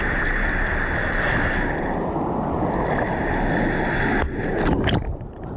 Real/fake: real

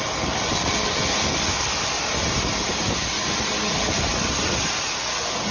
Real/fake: real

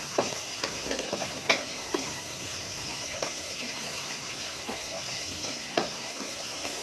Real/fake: fake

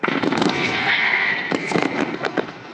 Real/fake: fake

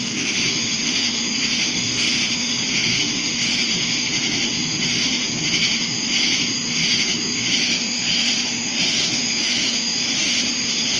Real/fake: fake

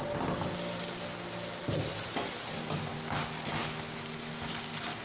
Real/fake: real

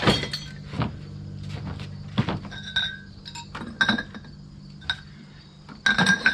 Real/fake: real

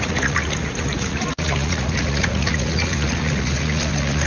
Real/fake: fake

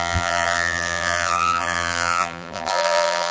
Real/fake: fake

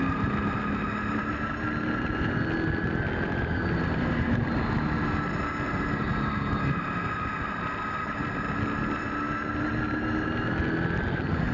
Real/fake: real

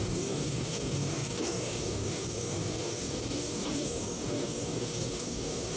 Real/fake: fake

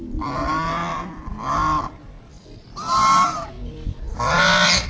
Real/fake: real